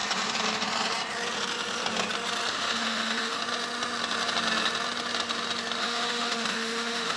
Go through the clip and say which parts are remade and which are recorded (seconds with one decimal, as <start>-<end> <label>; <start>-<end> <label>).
0.0-2.5 recorded; 2.5-3.4 remade; 3.4-5.8 recorded; 5.8-7.2 remade